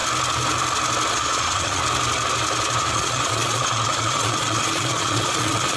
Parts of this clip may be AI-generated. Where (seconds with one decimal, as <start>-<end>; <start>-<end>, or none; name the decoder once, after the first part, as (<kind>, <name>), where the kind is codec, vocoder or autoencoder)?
1.1-1.8 (vocoder, Vocos); 2.8-5.8